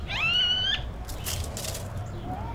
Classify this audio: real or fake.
real